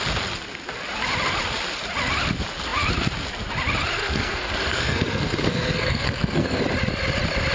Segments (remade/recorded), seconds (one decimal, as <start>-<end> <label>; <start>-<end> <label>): 0.0-4.0 recorded; 4.0-6.6 remade; 6.6-7.5 recorded